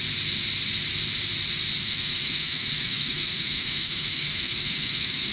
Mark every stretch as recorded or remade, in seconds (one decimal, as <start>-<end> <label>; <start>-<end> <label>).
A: 0.0-1.8 recorded; 1.8-5.3 remade